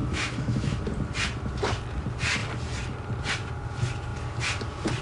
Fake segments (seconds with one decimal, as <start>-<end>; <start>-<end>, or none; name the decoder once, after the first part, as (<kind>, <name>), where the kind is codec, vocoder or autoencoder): 0.0-0.8 (autoencoder, DAC-VAE)